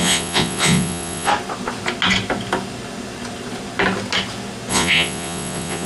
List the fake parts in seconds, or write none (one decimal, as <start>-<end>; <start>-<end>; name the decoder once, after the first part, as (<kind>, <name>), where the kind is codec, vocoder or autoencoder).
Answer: 0.0-1.3 (vocoder, Vocos); 4.7-5.9

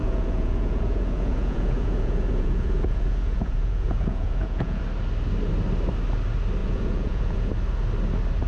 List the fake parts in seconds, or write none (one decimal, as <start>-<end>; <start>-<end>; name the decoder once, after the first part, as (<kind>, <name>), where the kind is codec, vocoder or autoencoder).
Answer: 0.0-4.8 (vocoder, Vocos); 6.6-7.5

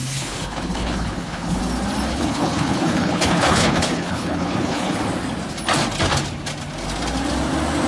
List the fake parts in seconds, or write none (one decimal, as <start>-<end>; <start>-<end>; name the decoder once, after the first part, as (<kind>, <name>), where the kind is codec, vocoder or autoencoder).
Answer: 0.0-1.6 (codec, HILCodec); 2.1-5.0

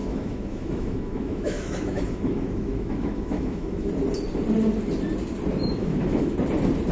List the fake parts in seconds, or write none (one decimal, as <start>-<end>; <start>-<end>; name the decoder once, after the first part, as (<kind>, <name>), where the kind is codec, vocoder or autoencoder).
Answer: 0.0-3.9 (autoencoder, DAC-VAE); 5.6-6.3

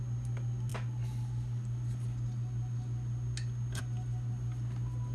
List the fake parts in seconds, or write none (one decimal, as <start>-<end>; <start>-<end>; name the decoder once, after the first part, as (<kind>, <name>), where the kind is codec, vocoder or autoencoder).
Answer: none

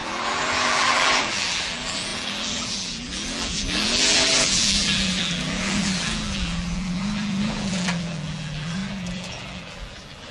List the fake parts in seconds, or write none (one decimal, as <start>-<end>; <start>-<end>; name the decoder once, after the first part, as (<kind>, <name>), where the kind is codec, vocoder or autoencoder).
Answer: 0.0-10.3 (vocoder, BigVGAN v2)

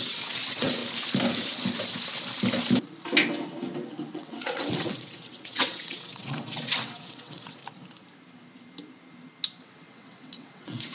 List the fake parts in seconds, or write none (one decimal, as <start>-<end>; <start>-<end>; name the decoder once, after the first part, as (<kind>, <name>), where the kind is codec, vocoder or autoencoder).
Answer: 0.0-0.8 (vocoder, WaveNeXt); 4.1-7.6; 9.6-10.9